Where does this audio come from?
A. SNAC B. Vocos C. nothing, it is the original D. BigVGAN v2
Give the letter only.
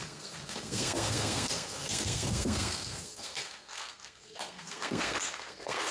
A